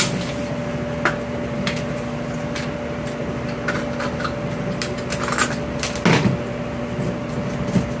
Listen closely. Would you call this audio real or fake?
real